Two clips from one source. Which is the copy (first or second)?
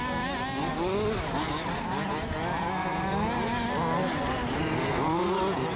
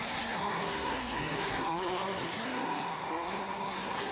second